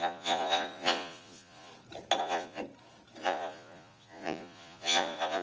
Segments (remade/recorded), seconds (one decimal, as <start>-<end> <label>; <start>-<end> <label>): 0.0-1.7 remade; 1.7-2.2 recorded; 2.2-2.6 remade; 2.6-3.2 recorded; 3.2-5.4 remade